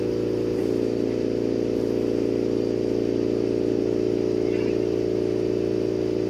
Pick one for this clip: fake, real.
real